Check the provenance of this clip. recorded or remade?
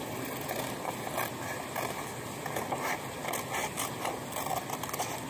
recorded